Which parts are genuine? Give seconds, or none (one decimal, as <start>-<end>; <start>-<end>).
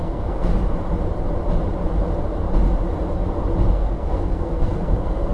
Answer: 0.5-3.7